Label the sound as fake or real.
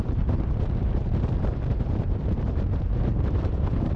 fake